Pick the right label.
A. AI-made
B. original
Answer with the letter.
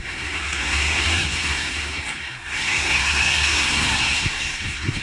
A